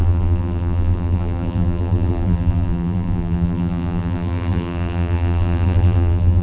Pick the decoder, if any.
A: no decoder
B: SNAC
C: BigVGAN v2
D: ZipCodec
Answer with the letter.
C